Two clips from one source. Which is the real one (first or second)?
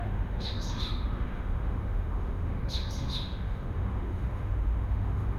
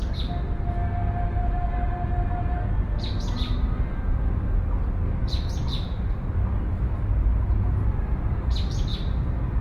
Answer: second